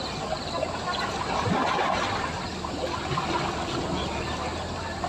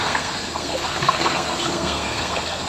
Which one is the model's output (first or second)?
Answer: second